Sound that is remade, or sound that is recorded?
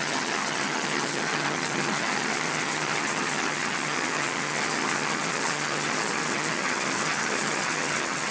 remade